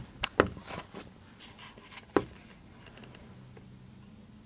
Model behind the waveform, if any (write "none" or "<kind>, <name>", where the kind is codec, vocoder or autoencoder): none